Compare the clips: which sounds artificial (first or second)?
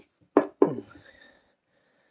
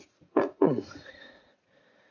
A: second